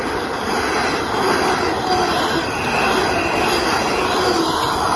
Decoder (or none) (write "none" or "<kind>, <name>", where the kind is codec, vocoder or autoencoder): none